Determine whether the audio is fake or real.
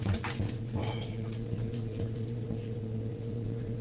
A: fake